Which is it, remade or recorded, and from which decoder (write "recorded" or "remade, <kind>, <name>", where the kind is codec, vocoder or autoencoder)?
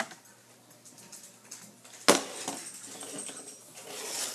recorded